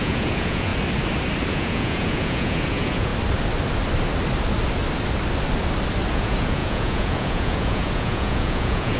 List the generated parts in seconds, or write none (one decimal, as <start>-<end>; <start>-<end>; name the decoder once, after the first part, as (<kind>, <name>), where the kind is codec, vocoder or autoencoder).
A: 0.0-0.7 (vocoder, Vocos); 1.5-3.1; 6.1-9.0